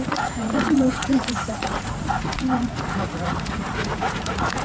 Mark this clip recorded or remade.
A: remade